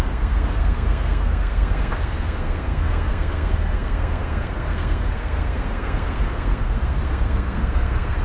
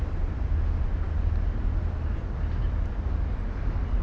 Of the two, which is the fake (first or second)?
first